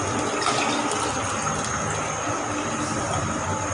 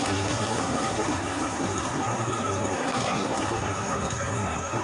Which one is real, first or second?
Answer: first